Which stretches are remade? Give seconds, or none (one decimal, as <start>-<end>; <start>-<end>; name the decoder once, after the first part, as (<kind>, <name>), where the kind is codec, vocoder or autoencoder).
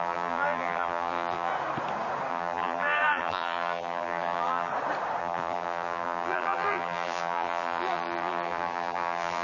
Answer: 0.0-1.5 (vocoder, BigVGAN v2); 2.3-4.7; 5.2-9.4